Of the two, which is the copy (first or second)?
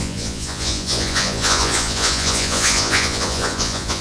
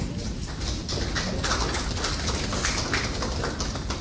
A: first